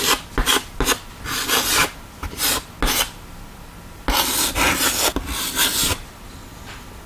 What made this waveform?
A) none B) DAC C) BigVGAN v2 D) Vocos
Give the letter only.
A